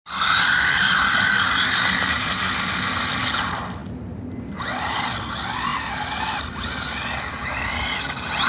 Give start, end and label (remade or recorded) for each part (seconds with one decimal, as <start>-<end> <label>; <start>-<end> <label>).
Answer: 0.0-8.5 recorded